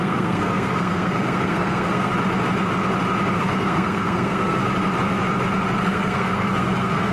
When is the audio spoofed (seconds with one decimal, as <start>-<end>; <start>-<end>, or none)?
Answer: 0.0-2.1; 3.4-4.6; 5.8-7.1